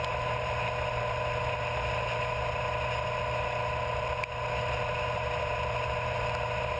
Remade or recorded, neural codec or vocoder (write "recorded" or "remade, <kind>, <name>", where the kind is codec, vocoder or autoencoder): recorded